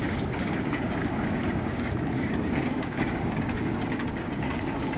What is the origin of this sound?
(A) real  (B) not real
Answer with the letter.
B